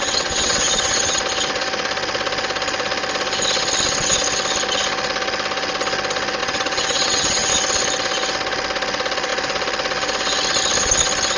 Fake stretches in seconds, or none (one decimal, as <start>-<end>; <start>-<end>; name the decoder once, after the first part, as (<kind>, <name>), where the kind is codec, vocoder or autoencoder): 0.0-1.2 (vocoder, WaveNeXt); 6.4-7.5